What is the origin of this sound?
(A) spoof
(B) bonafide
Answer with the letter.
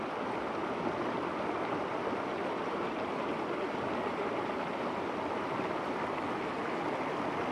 B